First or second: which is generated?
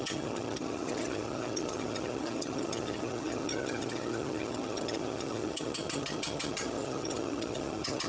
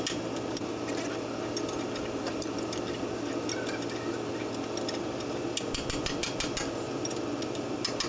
first